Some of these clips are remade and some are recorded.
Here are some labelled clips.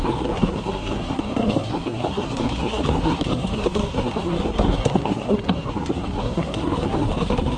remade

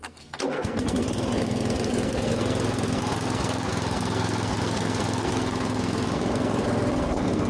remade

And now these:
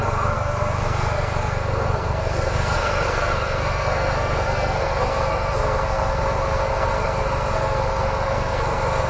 remade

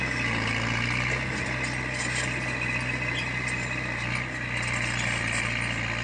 recorded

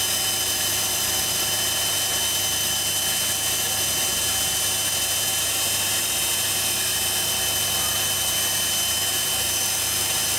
recorded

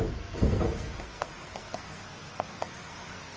remade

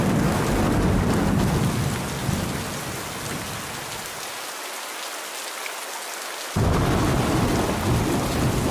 recorded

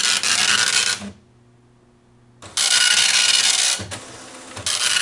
recorded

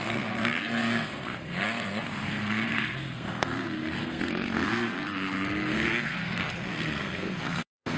remade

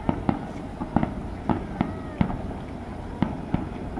recorded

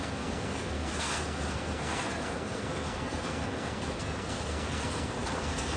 remade